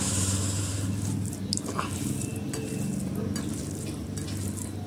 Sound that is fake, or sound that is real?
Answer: real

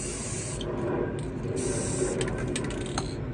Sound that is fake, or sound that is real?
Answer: real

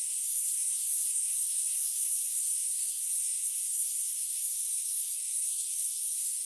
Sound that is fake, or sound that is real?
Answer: fake